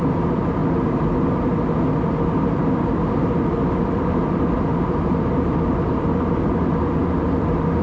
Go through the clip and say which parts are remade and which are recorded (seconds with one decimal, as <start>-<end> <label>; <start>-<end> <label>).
0.0-0.6 remade; 0.6-3.7 recorded; 3.7-7.8 remade